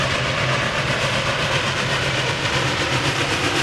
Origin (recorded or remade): remade